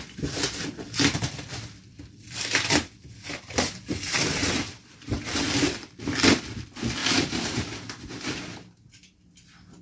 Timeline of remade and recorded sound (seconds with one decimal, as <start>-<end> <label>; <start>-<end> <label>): 0.0-1.9 recorded; 1.9-6.4 remade; 6.4-7.0 recorded; 7.0-8.4 remade; 8.4-9.8 recorded